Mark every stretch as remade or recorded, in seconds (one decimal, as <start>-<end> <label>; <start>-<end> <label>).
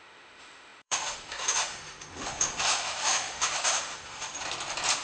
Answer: 0.0-4.3 remade; 4.3-5.0 recorded